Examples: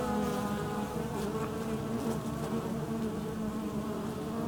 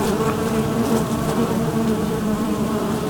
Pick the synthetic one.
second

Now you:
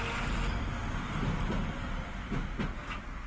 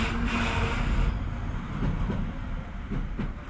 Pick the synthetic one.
second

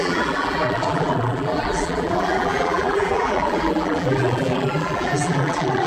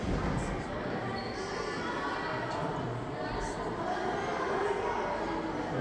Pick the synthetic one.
first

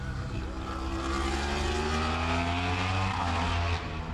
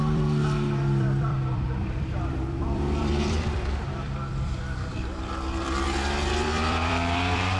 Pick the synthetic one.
second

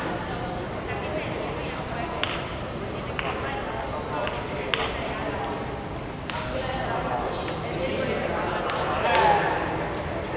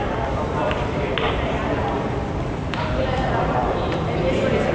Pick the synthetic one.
second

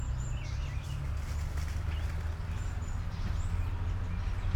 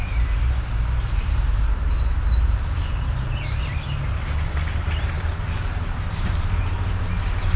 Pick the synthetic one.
second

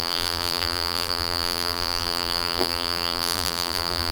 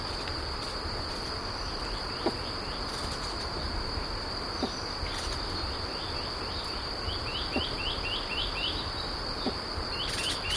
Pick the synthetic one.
first